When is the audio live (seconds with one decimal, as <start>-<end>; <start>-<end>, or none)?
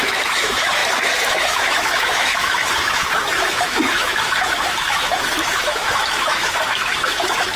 none